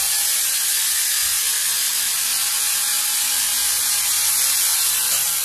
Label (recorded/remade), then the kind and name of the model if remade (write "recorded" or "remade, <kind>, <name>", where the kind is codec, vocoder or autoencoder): recorded